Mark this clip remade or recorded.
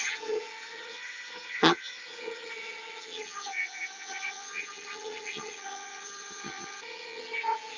remade